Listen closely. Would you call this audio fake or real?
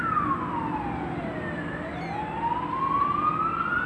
real